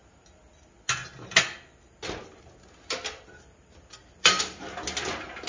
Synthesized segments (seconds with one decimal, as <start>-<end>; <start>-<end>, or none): none